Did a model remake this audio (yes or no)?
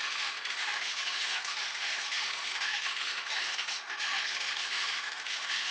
yes